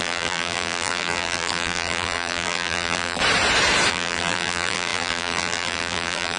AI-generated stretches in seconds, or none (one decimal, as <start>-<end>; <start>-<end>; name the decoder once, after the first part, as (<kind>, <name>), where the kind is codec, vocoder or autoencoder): 0.0-3.2 (vocoder, BigVGAN v2); 3.9-6.4

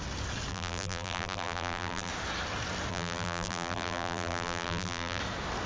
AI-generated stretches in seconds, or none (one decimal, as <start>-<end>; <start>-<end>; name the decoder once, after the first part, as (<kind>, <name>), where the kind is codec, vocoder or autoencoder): 0.5-2.1 (vocoder, BigVGAN v2); 2.9-5.2